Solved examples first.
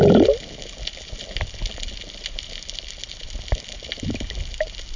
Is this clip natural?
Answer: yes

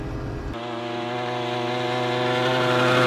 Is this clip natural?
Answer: yes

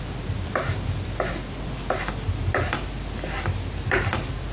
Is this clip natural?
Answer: yes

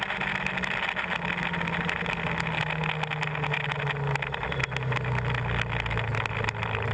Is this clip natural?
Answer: yes